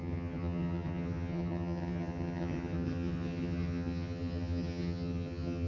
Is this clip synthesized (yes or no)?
yes